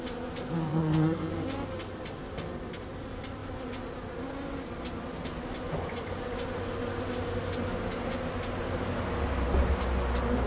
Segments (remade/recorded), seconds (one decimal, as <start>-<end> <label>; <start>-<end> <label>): 0.0-0.7 recorded; 0.7-1.3 remade; 1.3-10.5 recorded